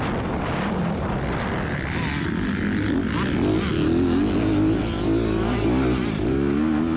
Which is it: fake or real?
real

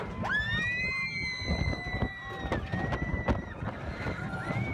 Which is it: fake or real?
real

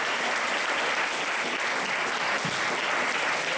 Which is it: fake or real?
real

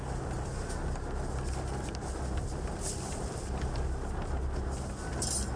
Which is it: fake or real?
real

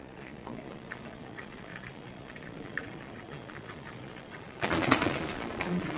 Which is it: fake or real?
fake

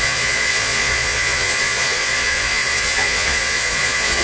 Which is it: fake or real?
fake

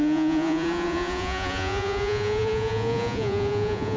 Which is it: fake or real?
fake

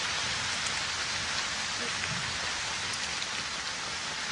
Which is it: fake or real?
real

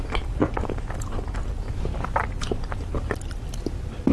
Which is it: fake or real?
real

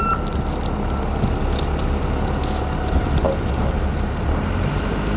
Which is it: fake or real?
real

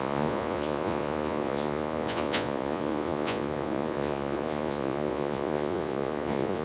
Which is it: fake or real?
fake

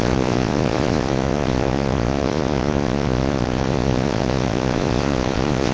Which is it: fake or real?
fake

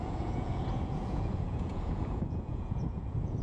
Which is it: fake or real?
fake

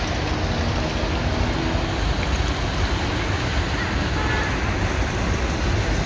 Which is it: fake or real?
real